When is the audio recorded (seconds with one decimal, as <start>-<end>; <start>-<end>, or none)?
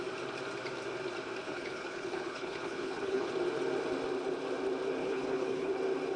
0.0-1.4; 3.3-5.0; 5.7-6.2